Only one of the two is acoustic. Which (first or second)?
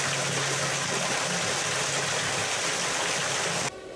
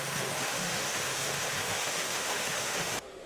first